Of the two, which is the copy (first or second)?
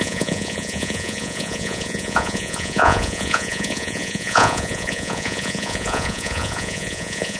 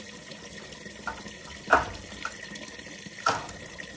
first